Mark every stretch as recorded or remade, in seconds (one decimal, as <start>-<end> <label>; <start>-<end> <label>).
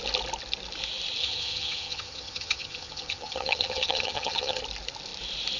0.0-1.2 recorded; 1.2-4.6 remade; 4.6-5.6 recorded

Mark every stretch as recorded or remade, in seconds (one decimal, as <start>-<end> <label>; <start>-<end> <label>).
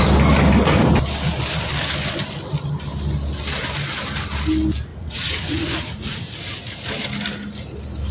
0.0-4.9 recorded; 4.9-6.2 remade; 6.2-8.1 recorded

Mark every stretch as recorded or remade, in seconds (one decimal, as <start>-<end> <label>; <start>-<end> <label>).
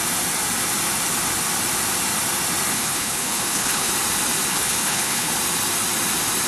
0.0-2.7 recorded; 2.7-3.9 remade; 3.9-4.5 recorded; 4.5-5.3 remade; 5.3-6.5 recorded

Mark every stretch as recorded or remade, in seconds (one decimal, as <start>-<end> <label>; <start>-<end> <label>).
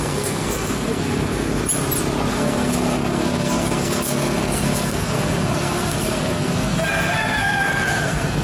0.0-1.6 remade; 1.6-2.3 recorded; 2.3-8.4 remade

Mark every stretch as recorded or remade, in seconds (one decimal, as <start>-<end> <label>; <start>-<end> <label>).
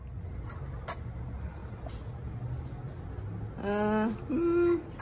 0.0-5.0 recorded